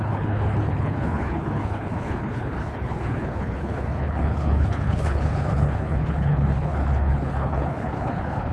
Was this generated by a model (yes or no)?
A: yes